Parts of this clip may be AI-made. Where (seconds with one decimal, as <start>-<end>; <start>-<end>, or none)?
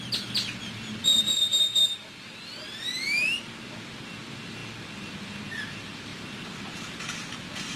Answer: 1.0-3.4